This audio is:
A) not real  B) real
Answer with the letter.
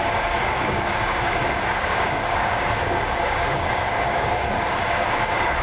A